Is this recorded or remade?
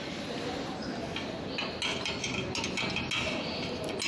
recorded